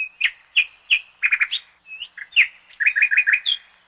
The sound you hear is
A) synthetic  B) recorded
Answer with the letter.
B